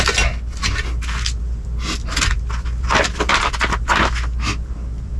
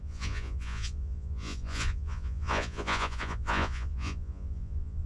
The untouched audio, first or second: first